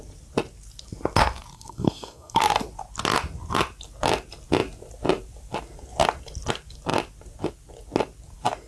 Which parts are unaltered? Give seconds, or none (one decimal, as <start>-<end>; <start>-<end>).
0.0-1.5; 2.4-8.7